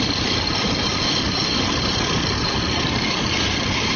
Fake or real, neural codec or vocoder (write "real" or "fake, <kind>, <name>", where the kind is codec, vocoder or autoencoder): real